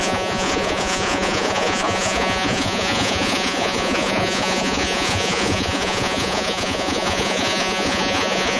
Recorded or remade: remade